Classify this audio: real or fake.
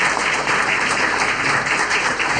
fake